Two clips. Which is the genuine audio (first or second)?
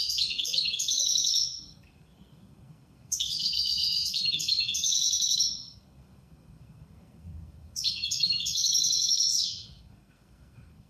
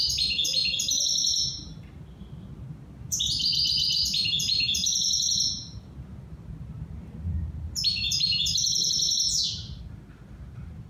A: second